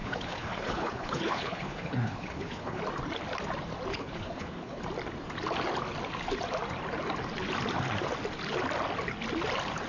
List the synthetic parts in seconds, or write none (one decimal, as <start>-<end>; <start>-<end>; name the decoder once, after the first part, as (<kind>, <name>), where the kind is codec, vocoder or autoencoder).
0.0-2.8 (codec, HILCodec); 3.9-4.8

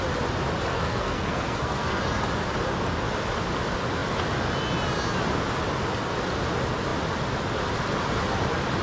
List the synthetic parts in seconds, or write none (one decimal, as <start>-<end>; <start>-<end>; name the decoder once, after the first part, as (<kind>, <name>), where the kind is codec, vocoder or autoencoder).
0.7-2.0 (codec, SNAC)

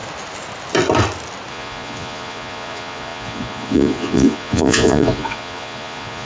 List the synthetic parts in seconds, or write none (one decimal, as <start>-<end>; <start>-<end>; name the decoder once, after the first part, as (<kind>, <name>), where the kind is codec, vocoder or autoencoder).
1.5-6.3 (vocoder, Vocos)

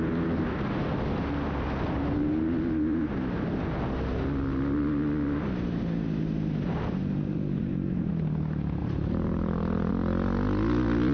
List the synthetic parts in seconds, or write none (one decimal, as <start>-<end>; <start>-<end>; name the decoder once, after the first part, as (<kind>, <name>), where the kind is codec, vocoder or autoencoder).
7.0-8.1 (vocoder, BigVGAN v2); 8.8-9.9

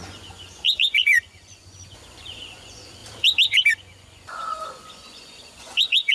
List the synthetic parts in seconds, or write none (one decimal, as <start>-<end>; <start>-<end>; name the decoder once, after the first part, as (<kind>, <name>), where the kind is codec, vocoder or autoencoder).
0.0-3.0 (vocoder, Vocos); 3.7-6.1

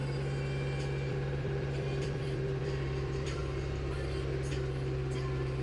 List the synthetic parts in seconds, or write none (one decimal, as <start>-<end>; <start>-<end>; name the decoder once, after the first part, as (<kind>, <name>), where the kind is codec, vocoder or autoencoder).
1.1-3.4 (vocoder, BigVGAN v2); 4.5-5.6